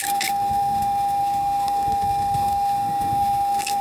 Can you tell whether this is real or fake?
fake